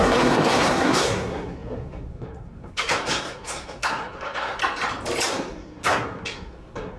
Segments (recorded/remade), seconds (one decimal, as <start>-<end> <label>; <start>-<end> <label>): 0.0-4.6 remade; 4.6-5.3 recorded; 5.3-7.0 remade

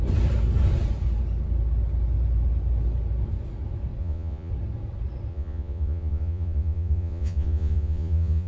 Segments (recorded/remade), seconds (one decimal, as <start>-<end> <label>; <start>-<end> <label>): 0.0-4.0 recorded; 4.0-4.5 remade; 4.5-5.3 recorded; 5.3-8.5 remade

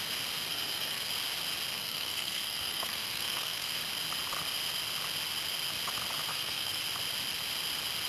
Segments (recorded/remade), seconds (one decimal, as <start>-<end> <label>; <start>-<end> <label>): 0.0-0.5 recorded; 0.5-1.1 remade; 1.1-1.7 recorded; 1.7-3.8 remade; 3.8-6.3 recorded; 6.3-6.8 remade; 6.8-8.1 recorded

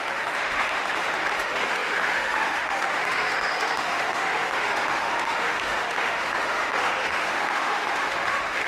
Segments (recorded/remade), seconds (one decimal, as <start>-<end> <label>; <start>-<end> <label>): 0.0-8.7 remade

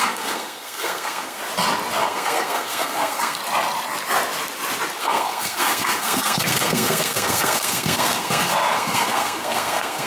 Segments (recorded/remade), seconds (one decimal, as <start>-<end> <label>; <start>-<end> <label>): 0.0-1.4 remade; 1.4-2.0 recorded; 2.0-3.4 remade; 3.4-5.0 recorded; 5.0-10.1 remade

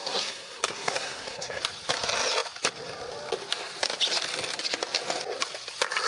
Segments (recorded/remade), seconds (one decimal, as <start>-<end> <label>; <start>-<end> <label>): 0.0-1.6 remade; 1.6-6.1 recorded